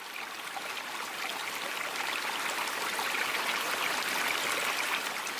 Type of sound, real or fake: real